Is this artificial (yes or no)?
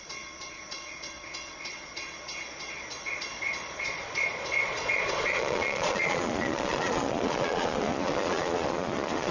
yes